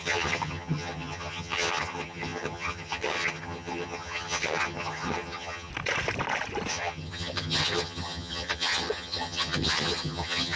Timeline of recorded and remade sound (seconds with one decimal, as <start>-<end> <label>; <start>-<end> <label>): 0.0-5.7 remade; 5.7-6.7 recorded; 6.7-10.6 remade